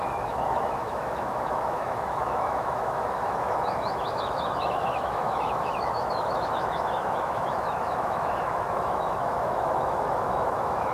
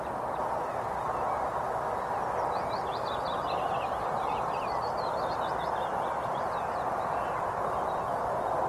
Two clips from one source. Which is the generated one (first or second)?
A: first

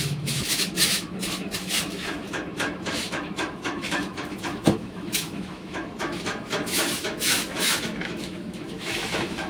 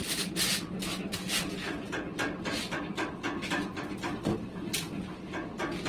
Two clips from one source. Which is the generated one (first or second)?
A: first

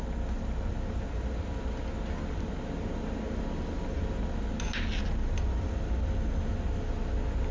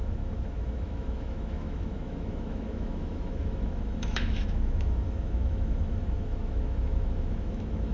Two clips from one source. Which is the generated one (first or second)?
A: second